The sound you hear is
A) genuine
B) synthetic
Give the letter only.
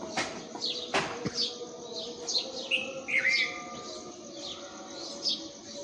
A